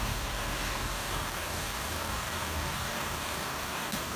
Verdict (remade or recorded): remade